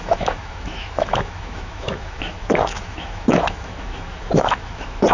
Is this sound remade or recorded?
remade